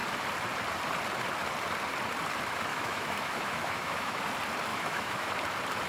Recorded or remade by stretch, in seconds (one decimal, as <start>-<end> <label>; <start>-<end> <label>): 0.0-2.7 recorded; 2.7-4.2 remade; 4.2-4.7 recorded; 4.7-5.3 remade; 5.3-5.9 recorded

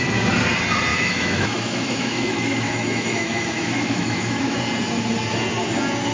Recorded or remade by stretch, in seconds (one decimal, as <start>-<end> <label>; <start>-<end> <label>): 0.0-0.9 recorded; 0.9-4.6 remade; 4.6-6.1 recorded